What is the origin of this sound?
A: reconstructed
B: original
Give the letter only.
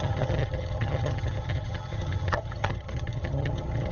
A